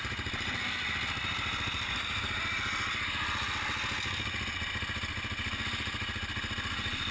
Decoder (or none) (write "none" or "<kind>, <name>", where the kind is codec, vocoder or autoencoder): none